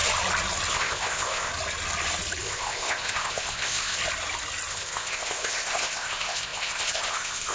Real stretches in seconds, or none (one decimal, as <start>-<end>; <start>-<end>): 0.0-0.7; 1.5-2.4; 4.0-4.7